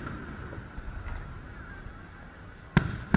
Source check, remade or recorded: recorded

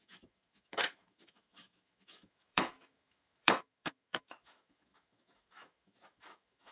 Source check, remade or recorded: remade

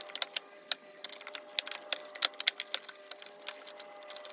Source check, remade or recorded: recorded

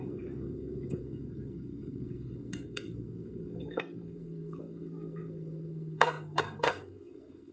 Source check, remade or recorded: remade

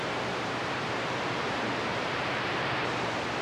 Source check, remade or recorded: remade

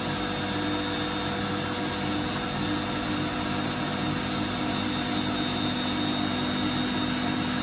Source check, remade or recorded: recorded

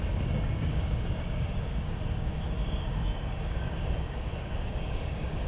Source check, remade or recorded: remade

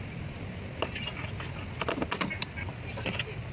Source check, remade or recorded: recorded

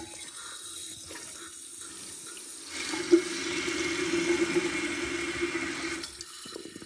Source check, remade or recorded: recorded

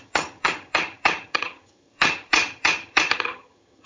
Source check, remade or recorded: remade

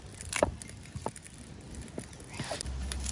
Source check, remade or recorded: recorded